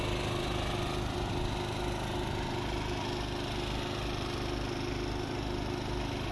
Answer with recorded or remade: recorded